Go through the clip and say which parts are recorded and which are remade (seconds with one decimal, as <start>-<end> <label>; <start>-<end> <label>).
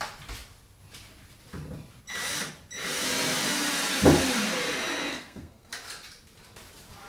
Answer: 0.0-5.1 recorded; 5.1-5.7 remade; 5.7-7.1 recorded